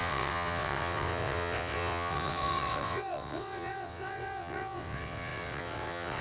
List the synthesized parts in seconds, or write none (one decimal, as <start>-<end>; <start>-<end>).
0.0-6.2